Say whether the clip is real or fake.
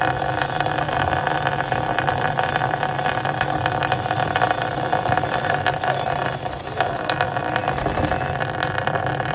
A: real